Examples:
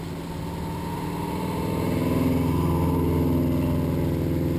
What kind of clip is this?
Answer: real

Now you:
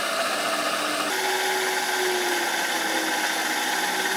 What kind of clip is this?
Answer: real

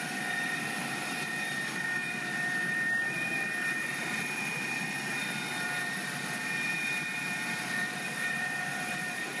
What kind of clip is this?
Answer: fake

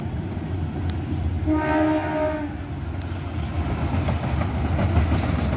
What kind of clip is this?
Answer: real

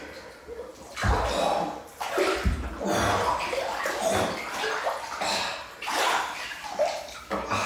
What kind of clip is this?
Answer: real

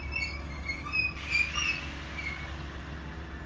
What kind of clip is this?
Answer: real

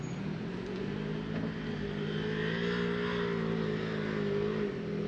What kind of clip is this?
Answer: real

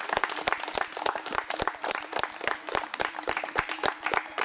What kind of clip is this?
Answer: fake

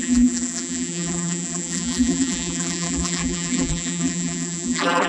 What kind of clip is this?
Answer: fake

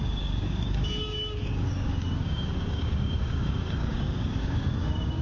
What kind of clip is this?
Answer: fake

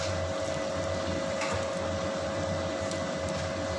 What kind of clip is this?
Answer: real